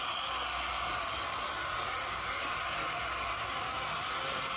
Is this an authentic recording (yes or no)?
yes